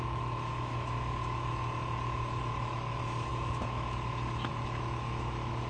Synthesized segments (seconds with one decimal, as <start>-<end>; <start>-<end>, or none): 0.0-5.7